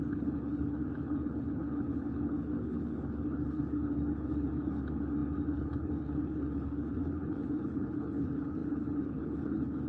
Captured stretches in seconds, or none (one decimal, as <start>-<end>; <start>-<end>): none